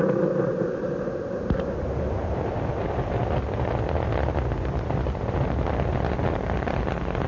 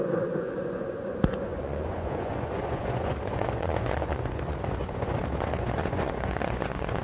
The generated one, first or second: second